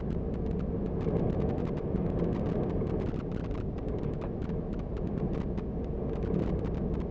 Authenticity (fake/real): real